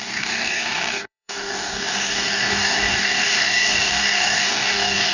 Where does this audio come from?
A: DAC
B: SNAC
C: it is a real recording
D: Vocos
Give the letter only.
A